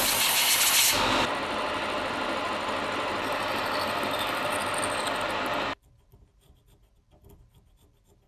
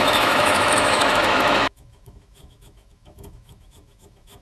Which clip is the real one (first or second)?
first